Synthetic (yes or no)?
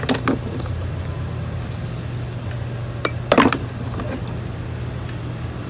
no